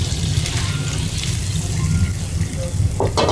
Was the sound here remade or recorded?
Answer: recorded